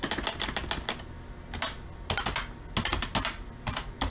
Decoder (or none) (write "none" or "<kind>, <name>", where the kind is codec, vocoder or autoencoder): none